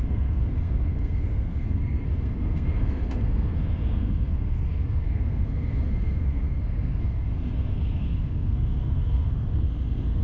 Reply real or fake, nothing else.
fake